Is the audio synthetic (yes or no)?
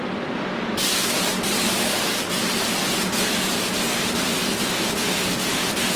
no